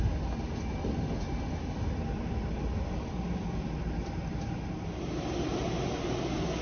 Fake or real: real